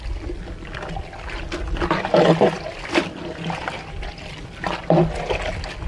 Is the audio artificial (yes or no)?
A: no